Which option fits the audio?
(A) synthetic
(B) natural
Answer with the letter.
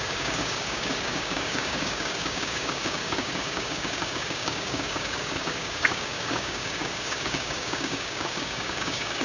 A